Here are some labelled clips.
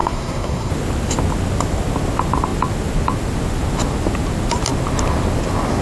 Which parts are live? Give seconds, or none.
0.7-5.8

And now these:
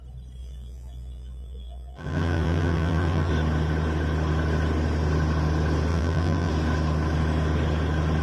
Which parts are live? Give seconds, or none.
0.0-0.4; 3.3-5.9; 6.5-8.2

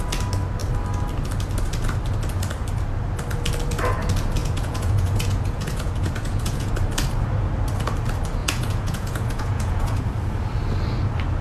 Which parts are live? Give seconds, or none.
0.0-4.4; 6.7-8.4; 10.0-11.4

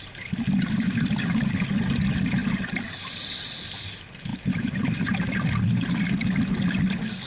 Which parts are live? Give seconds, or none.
0.0-7.3

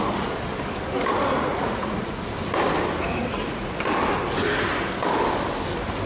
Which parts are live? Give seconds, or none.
0.0-1.3; 2.2-3.2; 3.8-6.1

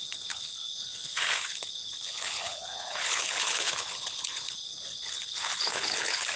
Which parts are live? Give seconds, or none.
none

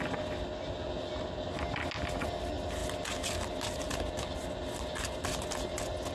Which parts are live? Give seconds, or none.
0.0-6.1